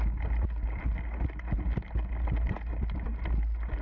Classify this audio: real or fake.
real